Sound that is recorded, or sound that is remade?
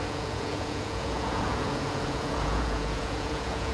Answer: remade